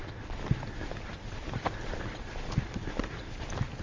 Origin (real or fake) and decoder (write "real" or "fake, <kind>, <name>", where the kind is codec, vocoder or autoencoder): real